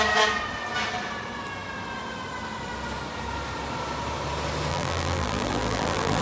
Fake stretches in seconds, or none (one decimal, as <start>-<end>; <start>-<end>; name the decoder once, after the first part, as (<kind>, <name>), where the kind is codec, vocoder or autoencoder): 4.7-6.2 (vocoder, BigVGAN v2)